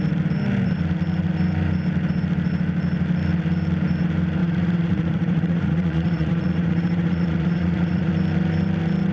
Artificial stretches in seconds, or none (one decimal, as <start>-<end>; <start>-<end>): 4.4-8.1